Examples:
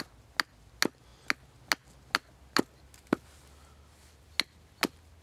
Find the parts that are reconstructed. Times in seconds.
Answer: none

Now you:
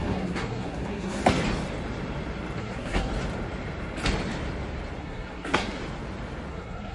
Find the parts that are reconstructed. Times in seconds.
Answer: 0.0-1.2; 2.6-3.1; 5.0-5.8; 6.5-6.9

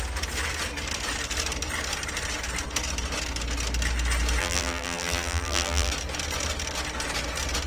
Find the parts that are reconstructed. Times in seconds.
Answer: 4.4-5.9